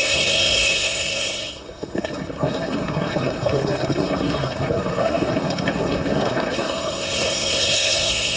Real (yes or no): no